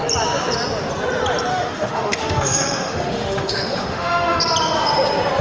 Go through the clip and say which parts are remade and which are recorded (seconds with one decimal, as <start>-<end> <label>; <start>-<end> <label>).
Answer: 0.0-1.5 recorded; 1.5-4.4 remade; 4.4-5.4 recorded